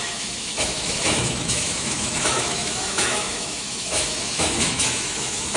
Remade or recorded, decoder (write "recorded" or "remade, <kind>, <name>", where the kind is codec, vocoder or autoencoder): remade, autoencoder, DAC-VAE